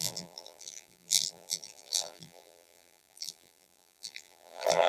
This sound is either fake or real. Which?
fake